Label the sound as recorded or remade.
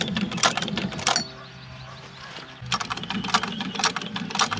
recorded